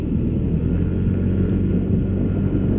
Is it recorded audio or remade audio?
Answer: recorded